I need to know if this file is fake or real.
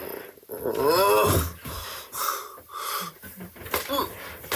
real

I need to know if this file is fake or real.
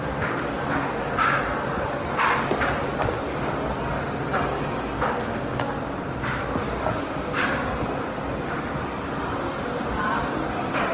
real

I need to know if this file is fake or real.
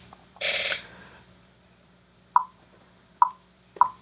fake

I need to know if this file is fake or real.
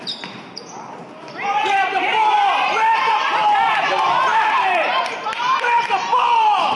fake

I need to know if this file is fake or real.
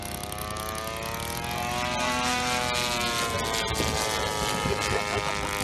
real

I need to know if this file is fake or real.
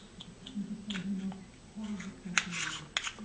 real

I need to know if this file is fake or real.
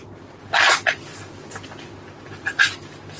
real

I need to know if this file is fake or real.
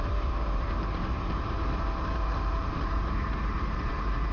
fake